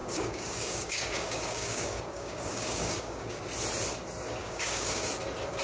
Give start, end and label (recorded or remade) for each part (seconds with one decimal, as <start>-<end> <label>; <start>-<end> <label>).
0.0-3.4 remade; 3.4-4.4 recorded; 4.4-5.1 remade; 5.1-5.6 recorded